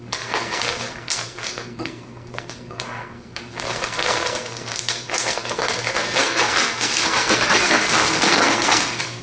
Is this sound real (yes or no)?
no